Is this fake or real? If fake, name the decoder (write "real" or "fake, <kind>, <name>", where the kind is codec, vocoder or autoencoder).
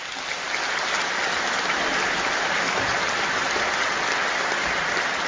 real